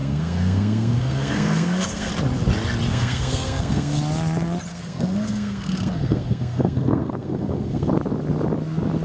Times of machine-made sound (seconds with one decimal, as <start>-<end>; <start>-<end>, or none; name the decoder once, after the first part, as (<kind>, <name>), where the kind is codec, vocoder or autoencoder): 0.0-2.1 (codec, SNAC); 2.9-4.0; 4.7-7.9